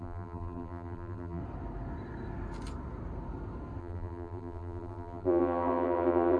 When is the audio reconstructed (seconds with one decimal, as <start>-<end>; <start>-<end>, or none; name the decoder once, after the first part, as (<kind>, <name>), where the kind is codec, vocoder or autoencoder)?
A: 0.0-1.4 (vocoder, BigVGAN v2); 3.8-6.4